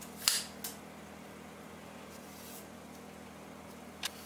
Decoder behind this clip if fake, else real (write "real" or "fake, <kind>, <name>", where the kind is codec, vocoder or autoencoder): real